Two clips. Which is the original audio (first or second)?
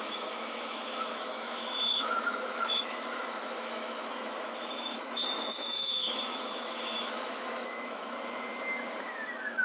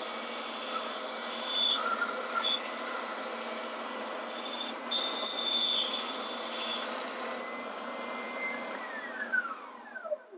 second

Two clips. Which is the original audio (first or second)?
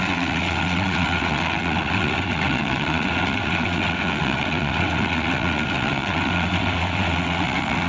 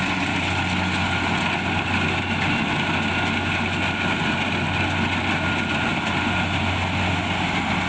second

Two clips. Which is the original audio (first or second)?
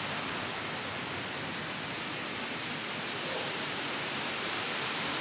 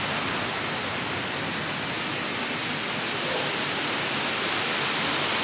second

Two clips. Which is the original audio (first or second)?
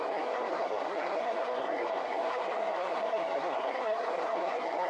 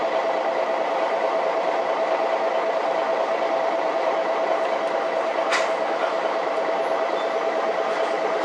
second